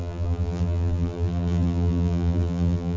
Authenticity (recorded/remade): remade